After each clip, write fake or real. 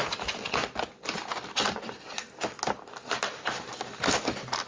real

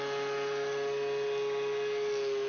real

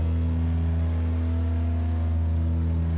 real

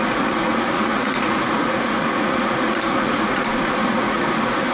fake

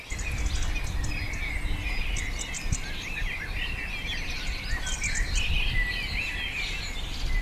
real